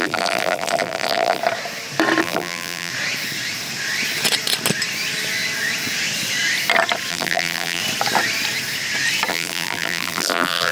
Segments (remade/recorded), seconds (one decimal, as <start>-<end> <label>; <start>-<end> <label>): 0.0-1.4 remade; 1.4-2.2 recorded; 2.2-2.9 remade; 2.9-7.1 recorded; 7.1-7.8 remade; 7.8-9.3 recorded; 9.3-10.7 remade